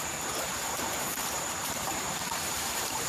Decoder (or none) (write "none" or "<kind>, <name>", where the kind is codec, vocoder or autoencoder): vocoder, BigVGAN v2